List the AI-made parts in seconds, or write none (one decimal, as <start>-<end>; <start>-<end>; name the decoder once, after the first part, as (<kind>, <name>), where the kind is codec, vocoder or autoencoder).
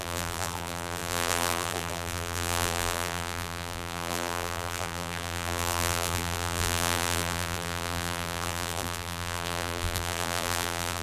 0.0-11.0 (vocoder, BigVGAN v2)